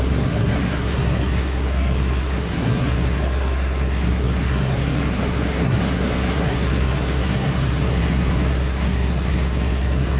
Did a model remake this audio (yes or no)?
yes